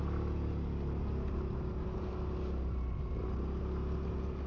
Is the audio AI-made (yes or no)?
no